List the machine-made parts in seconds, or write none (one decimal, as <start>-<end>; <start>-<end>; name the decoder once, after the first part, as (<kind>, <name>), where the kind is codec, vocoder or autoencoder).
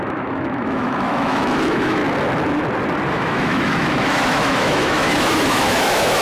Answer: 0.0-2.0 (autoencoder, DAC-VAE); 3.1-6.2